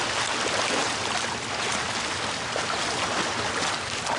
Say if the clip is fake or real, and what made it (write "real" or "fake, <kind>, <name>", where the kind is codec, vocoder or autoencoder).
real